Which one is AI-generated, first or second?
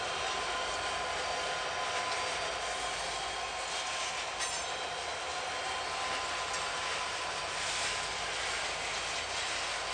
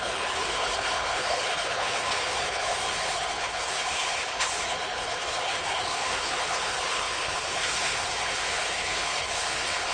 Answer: second